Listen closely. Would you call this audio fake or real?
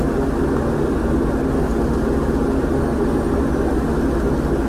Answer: real